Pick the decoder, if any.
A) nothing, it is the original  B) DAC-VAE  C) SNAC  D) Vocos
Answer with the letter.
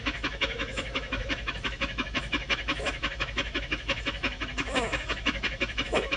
B